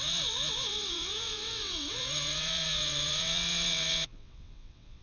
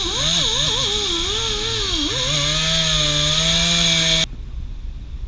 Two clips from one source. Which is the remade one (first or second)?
first